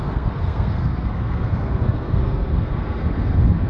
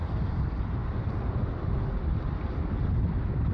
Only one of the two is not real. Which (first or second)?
first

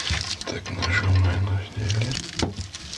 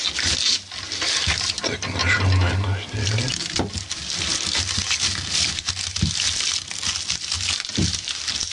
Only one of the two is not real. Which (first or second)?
second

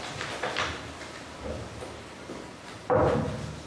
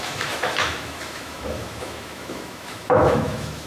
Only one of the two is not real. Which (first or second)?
second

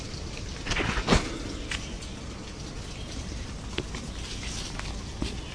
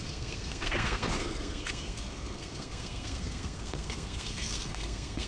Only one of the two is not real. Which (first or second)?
second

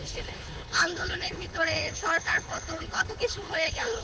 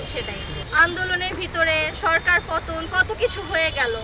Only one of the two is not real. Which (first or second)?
first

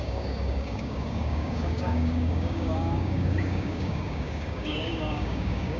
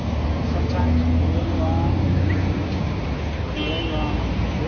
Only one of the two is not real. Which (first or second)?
first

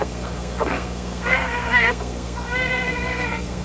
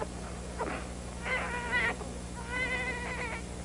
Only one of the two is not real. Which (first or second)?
first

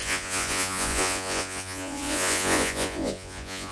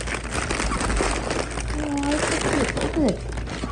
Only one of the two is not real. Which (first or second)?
first